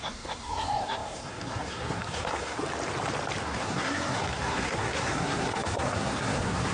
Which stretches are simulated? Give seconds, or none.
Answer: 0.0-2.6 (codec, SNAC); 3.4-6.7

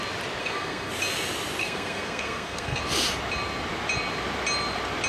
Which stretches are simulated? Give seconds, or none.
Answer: 0.4-0.9 (codec, SNAC); 1.6-2.8

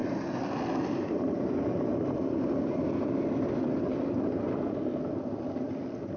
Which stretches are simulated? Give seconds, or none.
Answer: none